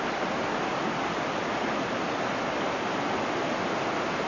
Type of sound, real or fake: real